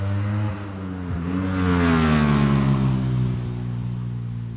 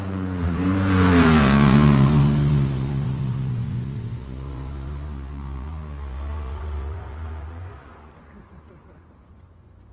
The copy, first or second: second